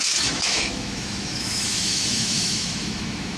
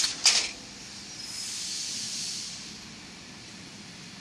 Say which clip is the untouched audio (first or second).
second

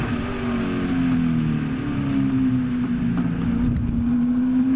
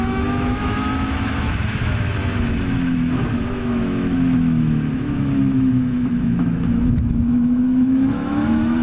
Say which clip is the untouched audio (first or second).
first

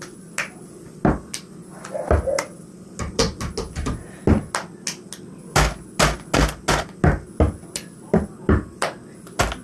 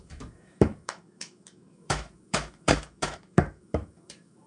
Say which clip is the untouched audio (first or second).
first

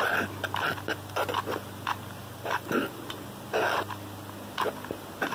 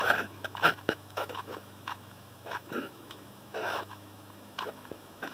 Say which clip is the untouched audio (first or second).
first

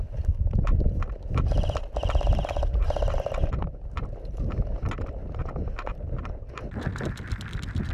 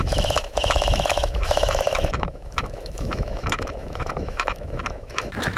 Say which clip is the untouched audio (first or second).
first